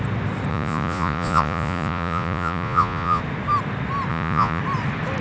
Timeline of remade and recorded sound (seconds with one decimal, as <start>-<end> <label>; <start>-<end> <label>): 0.0-0.5 recorded; 0.5-3.2 remade; 3.2-4.1 recorded; 4.1-4.6 remade; 4.6-5.2 recorded